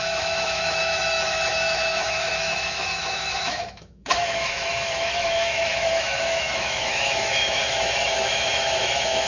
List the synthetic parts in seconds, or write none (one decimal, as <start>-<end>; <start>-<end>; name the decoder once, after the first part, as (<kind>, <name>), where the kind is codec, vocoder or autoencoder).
0.0-9.3 (autoencoder, DAC-VAE)